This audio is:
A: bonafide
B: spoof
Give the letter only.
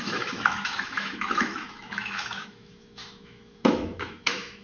B